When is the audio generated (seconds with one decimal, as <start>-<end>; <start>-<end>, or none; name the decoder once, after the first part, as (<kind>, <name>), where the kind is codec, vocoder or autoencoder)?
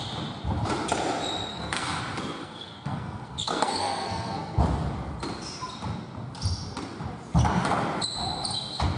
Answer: 1.5-2.0 (codec, SNAC); 2.4-4.6